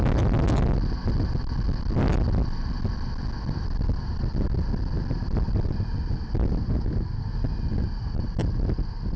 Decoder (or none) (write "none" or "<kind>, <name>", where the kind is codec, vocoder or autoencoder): none